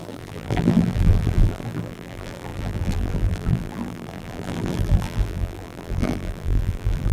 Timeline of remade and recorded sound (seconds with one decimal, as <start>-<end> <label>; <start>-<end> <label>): 0.0-7.1 remade